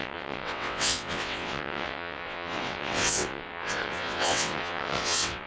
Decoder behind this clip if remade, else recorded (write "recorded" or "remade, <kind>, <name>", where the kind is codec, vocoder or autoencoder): remade, vocoder, WaveNeXt